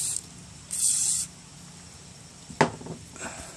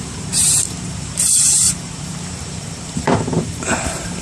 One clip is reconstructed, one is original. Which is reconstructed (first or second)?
second